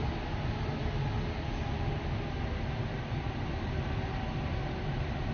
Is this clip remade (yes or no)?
no